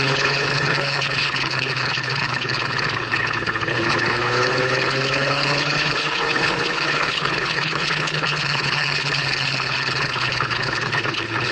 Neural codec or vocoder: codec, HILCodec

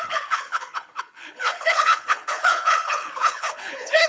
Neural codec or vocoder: codec, HILCodec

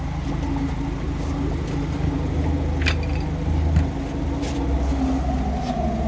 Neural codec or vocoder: none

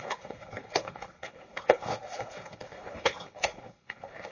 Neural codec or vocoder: codec, HILCodec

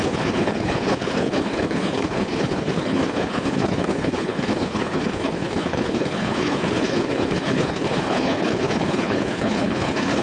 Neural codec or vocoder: codec, HILCodec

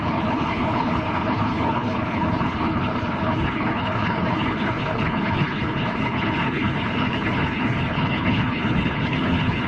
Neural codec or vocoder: codec, HILCodec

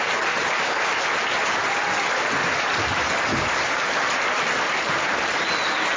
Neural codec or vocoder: none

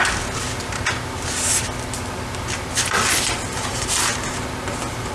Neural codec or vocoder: none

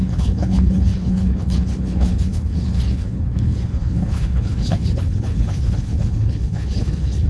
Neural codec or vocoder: codec, HILCodec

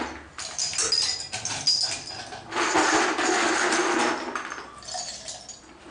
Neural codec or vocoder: none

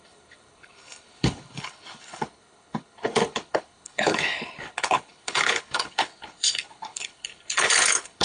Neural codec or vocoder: codec, HILCodec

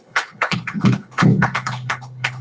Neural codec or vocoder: codec, HILCodec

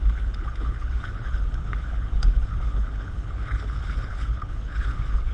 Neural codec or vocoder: codec, HILCodec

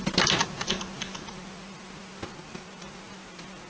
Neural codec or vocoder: none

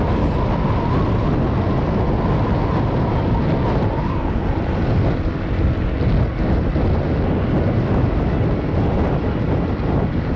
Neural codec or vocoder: none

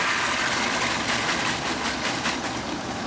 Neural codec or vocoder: none